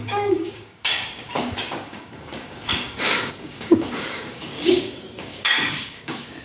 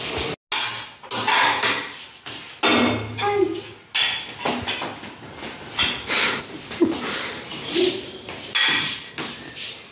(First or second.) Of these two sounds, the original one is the second